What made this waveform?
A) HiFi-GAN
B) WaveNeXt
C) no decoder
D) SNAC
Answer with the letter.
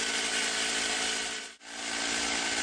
C